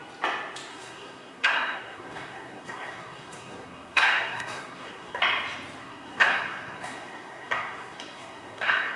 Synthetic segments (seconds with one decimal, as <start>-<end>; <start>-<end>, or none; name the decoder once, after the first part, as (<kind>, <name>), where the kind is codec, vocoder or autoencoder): 0.7-5.2 (codec, SNAC); 5.8-9.0